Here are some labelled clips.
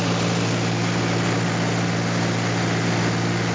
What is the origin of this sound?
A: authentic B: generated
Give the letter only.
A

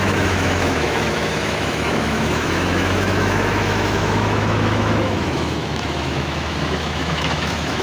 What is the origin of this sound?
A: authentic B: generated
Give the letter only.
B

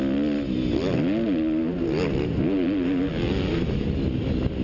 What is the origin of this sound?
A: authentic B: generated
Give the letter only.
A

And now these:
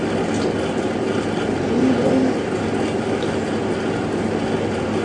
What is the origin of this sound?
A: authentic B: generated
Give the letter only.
A